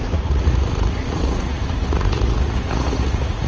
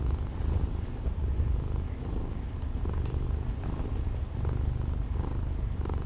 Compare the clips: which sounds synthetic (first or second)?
first